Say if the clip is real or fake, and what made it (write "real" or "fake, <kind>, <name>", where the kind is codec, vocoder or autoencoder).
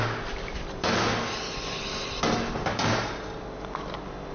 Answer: real